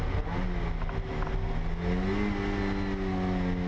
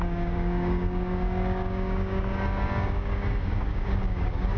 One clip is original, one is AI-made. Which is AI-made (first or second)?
second